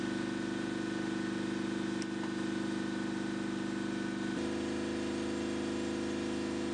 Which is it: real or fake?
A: real